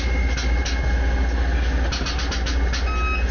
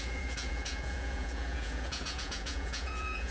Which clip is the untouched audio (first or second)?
first